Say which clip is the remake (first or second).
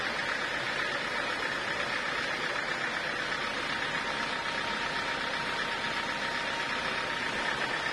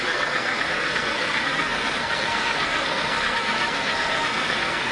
second